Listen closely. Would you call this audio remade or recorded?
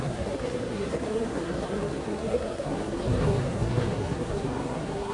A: remade